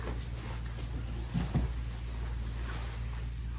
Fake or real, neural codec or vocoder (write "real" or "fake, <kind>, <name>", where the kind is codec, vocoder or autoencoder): real